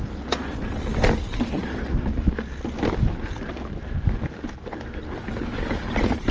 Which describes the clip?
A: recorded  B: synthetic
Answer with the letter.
A